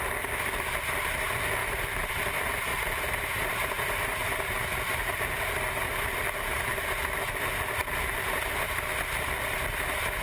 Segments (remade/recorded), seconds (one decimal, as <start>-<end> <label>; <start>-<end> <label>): 0.0-1.6 recorded; 1.6-2.2 remade; 2.2-2.7 recorded; 2.7-7.3 remade; 7.3-7.8 recorded; 7.8-8.5 remade; 8.5-10.2 recorded